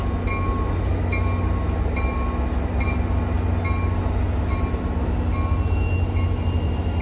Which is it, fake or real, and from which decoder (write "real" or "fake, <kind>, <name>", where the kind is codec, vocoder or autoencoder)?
real